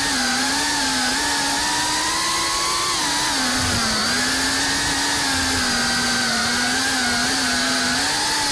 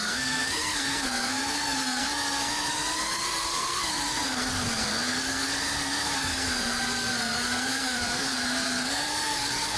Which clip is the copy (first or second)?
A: second